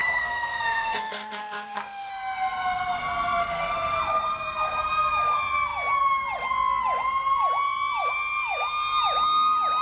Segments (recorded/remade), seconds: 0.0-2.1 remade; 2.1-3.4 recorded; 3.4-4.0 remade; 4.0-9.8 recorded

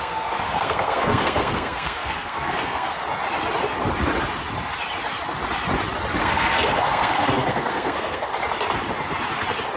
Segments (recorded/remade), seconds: 0.0-3.0 remade; 3.0-6.2 recorded; 6.2-8.3 remade; 8.3-9.8 recorded

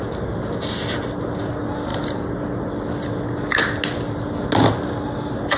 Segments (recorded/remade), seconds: 0.0-5.6 recorded

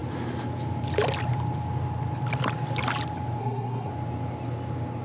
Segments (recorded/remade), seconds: 0.0-3.4 recorded; 3.4-3.9 remade; 3.9-5.0 recorded

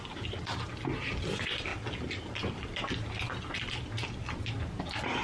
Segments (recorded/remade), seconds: 0.0-5.2 recorded

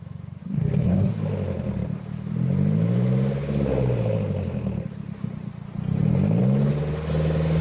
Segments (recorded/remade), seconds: 0.0-0.4 recorded; 0.4-1.1 remade; 1.1-7.6 recorded

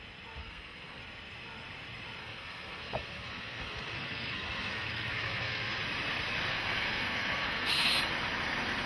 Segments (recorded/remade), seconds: 0.0-0.4 recorded; 0.4-1.0 remade; 1.0-2.2 recorded; 2.2-5.8 remade; 5.8-6.5 recorded; 6.5-8.0 remade; 8.0-8.9 recorded